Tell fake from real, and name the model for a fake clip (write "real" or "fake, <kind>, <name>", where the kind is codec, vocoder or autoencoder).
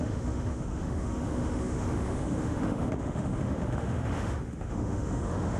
fake, autoencoder, DAC-VAE